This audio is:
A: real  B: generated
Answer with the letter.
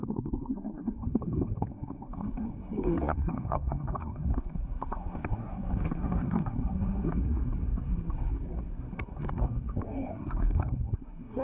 B